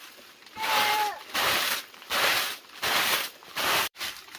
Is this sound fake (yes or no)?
yes